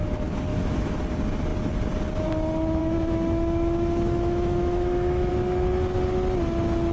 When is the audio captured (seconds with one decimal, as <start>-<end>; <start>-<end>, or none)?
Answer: 0.0-0.5; 1.0-2.8; 5.3-6.9